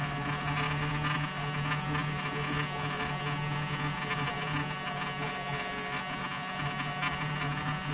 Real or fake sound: fake